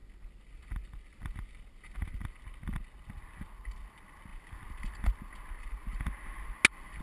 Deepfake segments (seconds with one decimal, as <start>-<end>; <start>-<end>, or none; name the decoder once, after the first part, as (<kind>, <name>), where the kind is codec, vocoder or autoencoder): none